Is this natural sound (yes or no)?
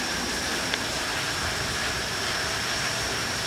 no